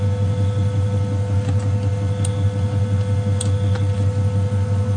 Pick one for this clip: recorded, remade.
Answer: recorded